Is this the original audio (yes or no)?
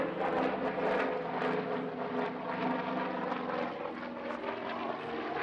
yes